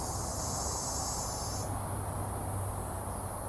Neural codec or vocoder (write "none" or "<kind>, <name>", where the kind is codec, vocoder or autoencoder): none